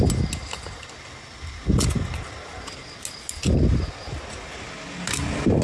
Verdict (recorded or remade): recorded